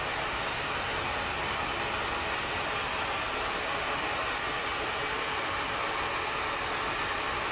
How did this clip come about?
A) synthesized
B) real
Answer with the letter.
B